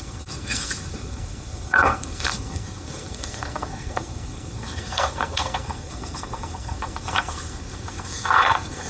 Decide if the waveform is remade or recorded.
remade